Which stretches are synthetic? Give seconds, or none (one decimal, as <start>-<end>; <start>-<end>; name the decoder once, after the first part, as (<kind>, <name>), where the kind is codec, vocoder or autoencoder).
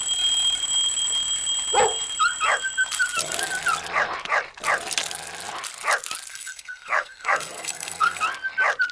6.3-8.2 (codec, SNAC)